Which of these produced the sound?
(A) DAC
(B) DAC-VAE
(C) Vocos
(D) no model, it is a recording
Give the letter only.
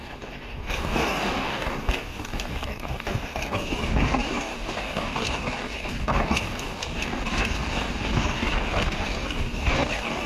A